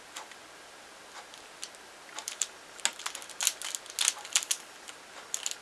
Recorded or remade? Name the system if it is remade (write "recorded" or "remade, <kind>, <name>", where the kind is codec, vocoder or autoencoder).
recorded